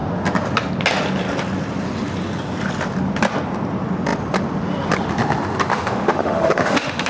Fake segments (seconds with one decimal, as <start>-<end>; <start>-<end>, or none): 5.7-7.1

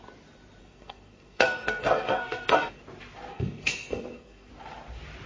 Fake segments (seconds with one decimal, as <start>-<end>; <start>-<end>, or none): 0.6-2.8; 3.3-4.5

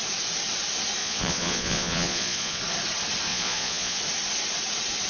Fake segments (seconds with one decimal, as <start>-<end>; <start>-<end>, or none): 1.0-2.6; 3.3-4.0

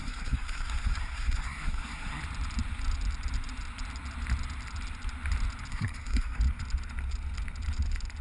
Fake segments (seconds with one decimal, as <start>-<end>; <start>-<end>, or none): 0.0-2.2; 5.7-6.4